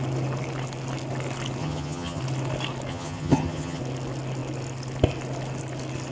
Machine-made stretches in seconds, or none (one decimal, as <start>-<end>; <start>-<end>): 1.6-2.2; 2.9-3.8